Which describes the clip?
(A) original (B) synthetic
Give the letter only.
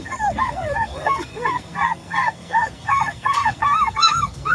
B